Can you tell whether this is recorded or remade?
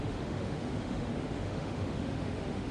remade